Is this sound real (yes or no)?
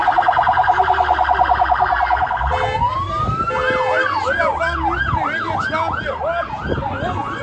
yes